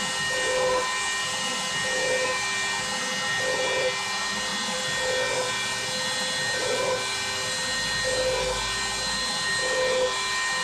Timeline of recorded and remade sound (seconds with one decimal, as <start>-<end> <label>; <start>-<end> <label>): 0.0-10.6 recorded